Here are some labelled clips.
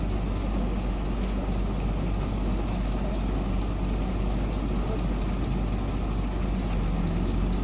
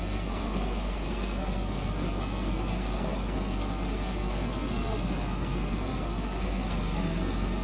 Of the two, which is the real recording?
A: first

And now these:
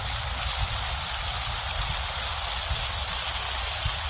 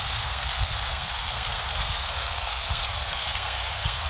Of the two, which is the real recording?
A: first